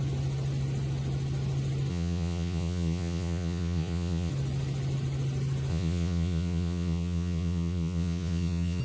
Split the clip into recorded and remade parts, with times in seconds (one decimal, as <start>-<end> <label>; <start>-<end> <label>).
0.0-1.9 recorded; 1.9-4.3 remade; 4.3-5.7 recorded; 5.7-8.8 remade